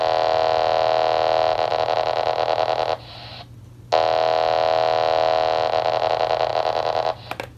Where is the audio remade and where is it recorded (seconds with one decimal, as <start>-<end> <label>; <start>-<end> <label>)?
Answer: 0.0-7.6 recorded